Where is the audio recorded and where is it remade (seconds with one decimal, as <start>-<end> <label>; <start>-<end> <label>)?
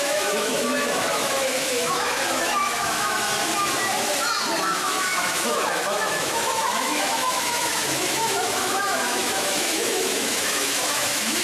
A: 0.0-3.3 remade; 3.3-4.6 recorded; 4.6-11.4 remade